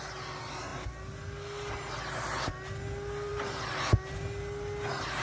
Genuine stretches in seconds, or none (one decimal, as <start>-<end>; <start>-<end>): 0.0-5.2